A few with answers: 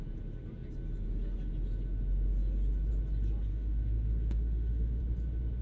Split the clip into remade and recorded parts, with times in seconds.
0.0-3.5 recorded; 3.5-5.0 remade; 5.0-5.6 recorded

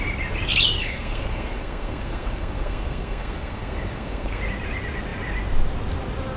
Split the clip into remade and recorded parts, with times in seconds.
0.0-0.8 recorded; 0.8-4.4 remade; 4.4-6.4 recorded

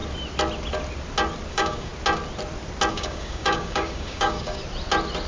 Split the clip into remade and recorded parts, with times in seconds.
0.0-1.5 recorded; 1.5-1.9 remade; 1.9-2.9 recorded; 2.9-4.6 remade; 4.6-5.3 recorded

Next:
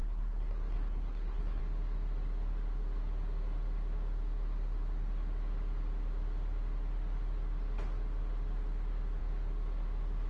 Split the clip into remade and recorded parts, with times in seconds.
0.0-1.6 remade; 1.6-10.3 recorded